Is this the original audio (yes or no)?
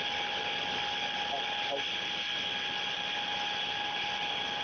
yes